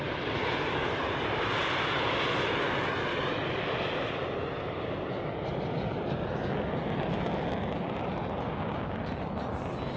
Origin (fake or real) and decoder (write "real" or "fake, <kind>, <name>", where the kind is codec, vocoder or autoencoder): real